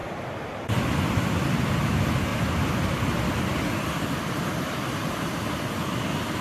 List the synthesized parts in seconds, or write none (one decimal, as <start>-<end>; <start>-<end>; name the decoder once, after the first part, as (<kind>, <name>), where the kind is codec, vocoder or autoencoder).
none